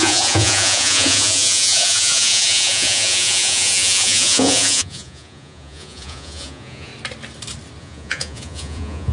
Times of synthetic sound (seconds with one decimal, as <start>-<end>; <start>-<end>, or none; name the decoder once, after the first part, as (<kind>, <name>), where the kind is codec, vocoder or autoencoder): 0.0-6.9 (vocoder, Vocos); 7.8-9.1